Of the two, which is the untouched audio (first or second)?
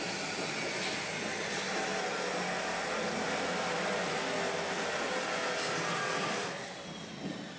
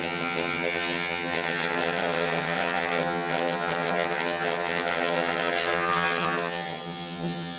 first